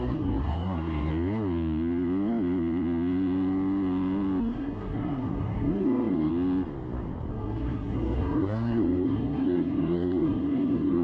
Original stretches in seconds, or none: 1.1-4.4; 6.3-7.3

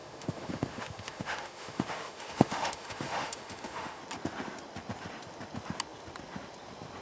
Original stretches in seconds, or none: 4.0-7.0